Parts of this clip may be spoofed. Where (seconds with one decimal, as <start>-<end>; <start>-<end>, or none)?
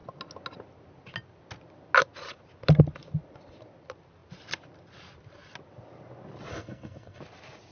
6.5-7.2